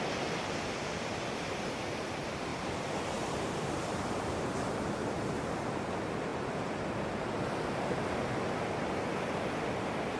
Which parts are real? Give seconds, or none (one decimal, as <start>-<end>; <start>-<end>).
0.0-2.5; 4.4-5.0; 5.8-10.2